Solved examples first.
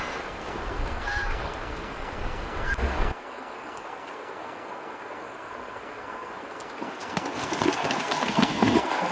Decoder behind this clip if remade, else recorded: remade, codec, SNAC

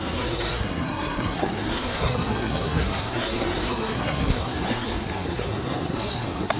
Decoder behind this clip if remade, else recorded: remade, codec, SNAC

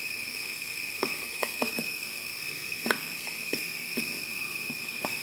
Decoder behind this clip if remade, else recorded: remade, codec, SNAC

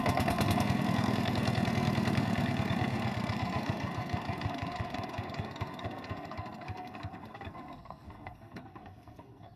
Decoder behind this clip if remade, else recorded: remade, codec, SNAC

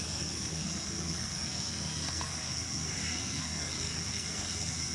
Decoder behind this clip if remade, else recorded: remade, codec, SNAC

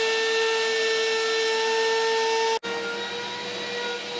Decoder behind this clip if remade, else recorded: recorded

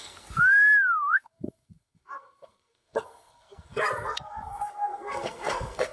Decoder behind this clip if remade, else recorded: remade, codec, SNAC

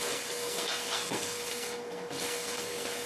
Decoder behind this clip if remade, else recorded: remade, codec, SNAC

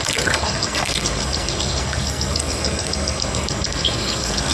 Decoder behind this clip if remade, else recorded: remade, codec, SNAC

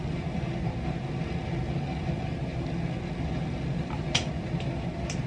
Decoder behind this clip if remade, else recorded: recorded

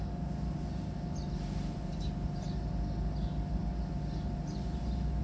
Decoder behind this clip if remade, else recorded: recorded